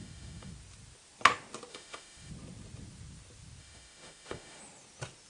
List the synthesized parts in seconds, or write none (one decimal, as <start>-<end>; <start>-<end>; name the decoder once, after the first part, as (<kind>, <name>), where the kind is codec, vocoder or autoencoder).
0.0-0.5 (autoencoder, DAC-VAE); 1.7-2.3; 3.6-4.6